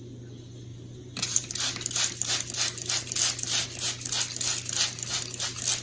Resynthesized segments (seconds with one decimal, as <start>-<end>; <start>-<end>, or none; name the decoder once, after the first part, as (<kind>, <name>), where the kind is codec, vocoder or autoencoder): 0.7-1.5 (vocoder, BigVGAN v2)